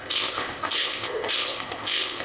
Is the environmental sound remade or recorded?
remade